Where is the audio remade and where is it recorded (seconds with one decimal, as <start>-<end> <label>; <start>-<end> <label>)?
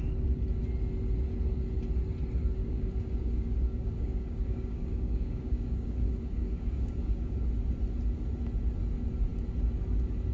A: 0.0-2.6 recorded; 2.6-7.3 remade; 7.3-10.3 recorded